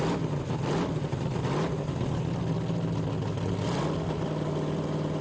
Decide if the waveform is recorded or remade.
recorded